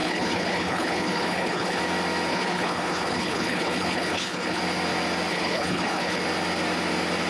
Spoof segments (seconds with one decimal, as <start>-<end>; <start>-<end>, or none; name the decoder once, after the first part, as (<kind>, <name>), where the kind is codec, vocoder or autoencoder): 0.0-1.8 (codec, HILCodec); 2.3-4.6; 5.3-6.2